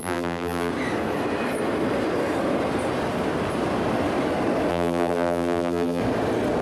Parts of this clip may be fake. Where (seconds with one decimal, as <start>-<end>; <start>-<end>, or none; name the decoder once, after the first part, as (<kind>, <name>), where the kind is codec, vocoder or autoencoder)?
0.0-0.7 (vocoder, BigVGAN v2); 4.7-6.0